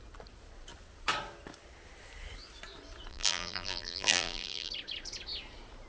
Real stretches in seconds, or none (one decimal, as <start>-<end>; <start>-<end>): 0.0-3.1; 4.7-5.9